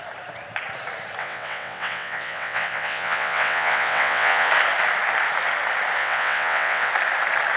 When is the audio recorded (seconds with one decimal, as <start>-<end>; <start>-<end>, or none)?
0.0-1.2; 4.5-6.0; 6.9-7.6